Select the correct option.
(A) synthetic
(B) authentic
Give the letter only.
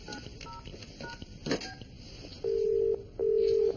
B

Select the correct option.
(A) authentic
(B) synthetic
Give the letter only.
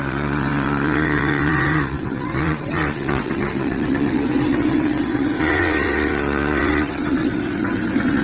B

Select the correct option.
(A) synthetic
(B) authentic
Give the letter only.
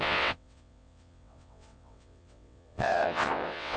A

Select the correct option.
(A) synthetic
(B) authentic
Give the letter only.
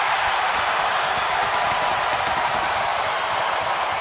B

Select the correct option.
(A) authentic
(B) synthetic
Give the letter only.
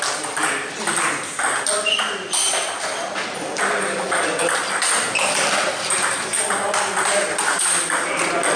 A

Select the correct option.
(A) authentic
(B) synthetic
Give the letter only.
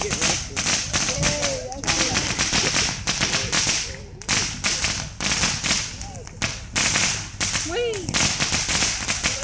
A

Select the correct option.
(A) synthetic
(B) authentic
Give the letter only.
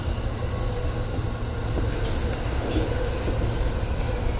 B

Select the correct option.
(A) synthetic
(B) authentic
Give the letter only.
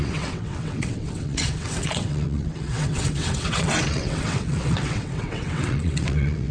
A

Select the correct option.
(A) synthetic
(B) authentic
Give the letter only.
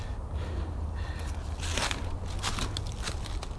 B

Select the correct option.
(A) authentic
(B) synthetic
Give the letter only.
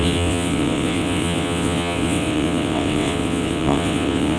B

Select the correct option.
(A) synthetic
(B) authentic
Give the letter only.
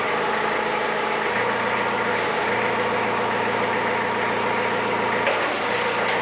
B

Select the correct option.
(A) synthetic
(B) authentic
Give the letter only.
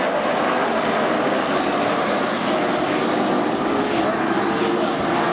B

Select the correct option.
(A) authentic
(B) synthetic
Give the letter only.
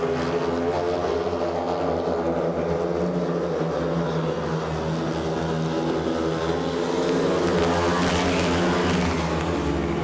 A